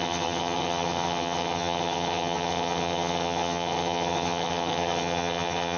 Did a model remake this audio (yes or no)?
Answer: yes